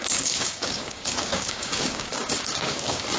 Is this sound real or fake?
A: fake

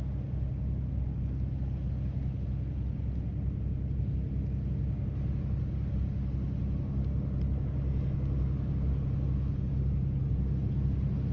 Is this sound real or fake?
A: real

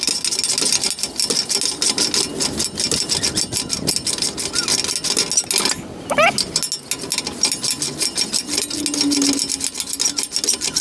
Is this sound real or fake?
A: real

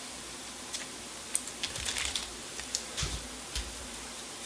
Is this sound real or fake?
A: real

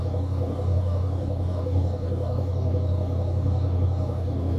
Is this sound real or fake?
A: fake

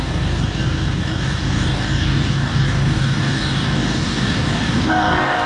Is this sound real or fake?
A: fake